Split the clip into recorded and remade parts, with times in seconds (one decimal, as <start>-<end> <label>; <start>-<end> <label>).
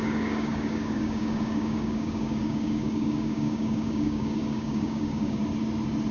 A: 0.0-5.4 remade; 5.4-6.1 recorded